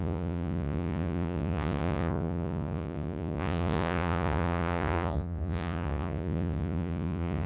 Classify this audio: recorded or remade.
remade